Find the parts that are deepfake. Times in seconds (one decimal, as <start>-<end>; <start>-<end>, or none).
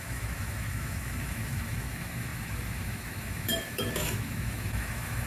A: 0.0-5.3